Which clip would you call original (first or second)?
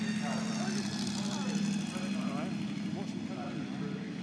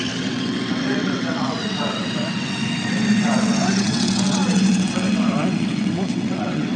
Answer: first